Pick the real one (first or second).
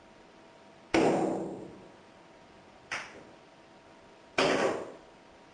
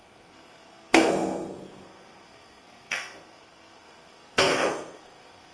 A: first